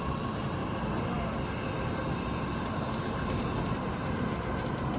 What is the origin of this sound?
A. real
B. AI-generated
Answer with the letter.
A